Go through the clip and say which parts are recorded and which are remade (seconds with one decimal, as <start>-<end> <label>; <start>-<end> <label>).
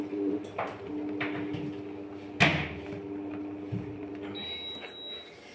0.0-2.5 recorded; 2.5-4.1 remade; 4.1-5.5 recorded